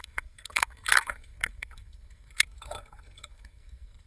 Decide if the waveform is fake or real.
fake